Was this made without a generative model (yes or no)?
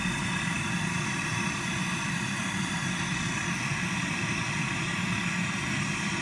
yes